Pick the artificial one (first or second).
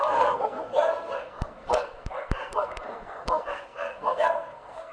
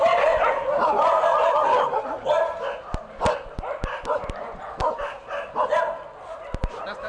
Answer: first